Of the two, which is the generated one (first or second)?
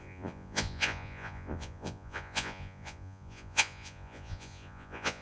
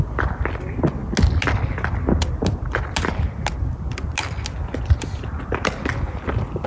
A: first